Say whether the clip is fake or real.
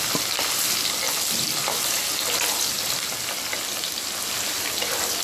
real